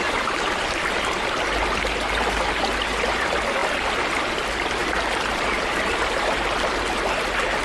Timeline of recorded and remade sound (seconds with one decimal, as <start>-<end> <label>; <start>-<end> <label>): 0.0-7.6 recorded